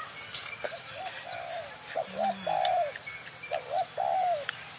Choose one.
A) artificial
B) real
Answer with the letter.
B